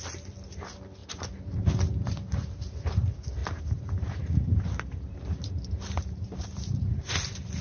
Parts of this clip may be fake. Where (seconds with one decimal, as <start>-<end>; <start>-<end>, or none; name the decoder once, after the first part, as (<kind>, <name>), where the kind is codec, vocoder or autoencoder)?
1.0-2.7 (vocoder, BigVGAN v2); 3.4-7.6